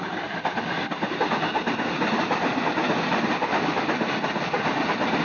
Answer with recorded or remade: recorded